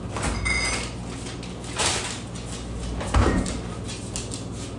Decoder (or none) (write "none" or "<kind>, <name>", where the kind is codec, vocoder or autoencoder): none